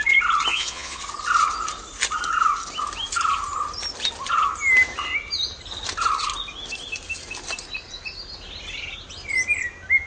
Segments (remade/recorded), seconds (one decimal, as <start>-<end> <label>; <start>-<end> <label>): 0.0-0.5 recorded; 0.5-1.0 remade; 1.0-10.1 recorded